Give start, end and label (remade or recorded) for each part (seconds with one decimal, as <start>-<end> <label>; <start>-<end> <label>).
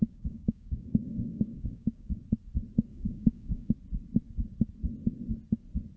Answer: 0.0-2.2 remade; 2.2-2.9 recorded; 2.9-3.7 remade; 3.7-6.0 recorded